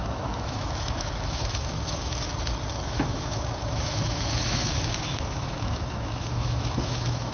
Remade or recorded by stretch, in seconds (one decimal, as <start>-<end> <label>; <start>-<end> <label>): 0.0-2.3 remade; 2.3-2.8 recorded; 2.8-7.3 remade